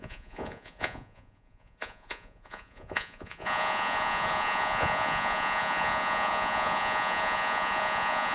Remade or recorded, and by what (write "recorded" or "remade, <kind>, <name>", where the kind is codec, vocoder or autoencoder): remade, vocoder, Vocos